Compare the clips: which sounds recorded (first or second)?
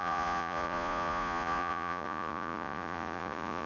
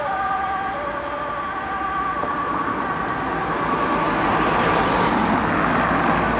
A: second